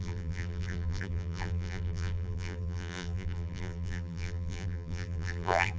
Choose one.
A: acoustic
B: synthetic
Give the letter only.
B